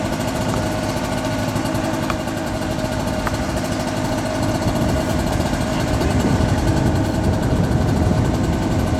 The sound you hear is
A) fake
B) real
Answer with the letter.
B